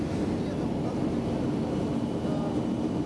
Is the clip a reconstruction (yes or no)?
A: no